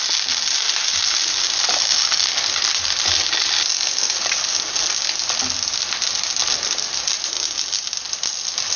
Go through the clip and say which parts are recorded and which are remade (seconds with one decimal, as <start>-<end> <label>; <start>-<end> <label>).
0.0-8.8 recorded